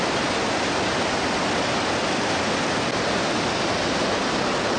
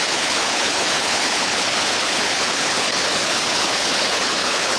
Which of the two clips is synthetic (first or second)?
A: second